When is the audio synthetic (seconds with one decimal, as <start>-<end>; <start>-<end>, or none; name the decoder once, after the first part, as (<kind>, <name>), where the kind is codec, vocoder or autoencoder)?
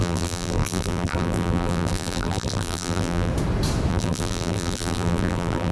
0.0-3.3 (vocoder, BigVGAN v2); 3.9-5.7